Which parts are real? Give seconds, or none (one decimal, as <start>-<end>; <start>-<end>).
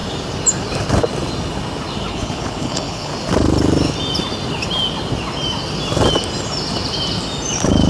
0.0-2.1; 3.1-7.9